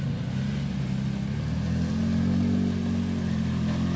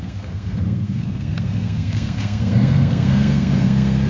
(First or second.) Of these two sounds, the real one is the first